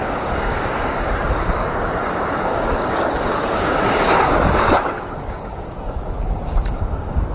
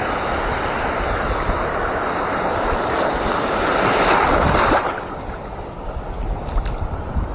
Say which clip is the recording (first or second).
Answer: second